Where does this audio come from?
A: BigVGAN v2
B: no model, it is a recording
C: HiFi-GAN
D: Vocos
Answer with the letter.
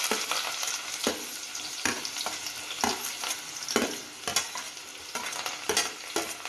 B